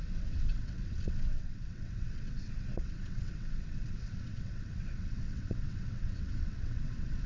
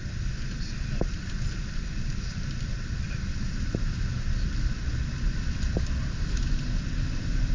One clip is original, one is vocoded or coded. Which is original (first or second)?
second